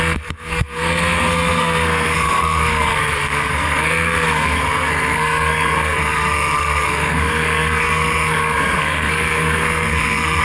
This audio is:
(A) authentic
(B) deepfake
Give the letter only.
B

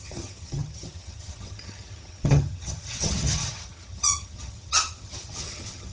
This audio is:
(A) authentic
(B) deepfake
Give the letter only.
B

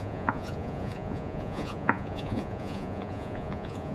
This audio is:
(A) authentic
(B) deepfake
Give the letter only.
B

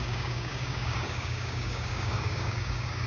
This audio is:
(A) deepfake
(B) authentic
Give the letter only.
A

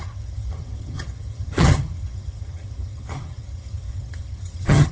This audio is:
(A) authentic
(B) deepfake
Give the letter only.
B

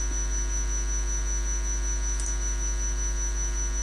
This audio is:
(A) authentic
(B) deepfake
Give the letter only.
A